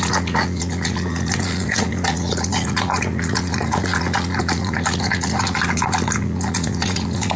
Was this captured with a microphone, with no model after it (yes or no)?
no